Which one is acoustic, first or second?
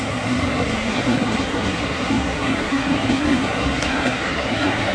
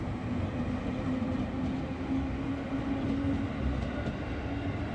second